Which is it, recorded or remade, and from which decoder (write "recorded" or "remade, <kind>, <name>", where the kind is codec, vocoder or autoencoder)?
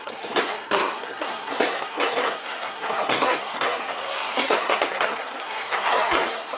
remade, codec, SNAC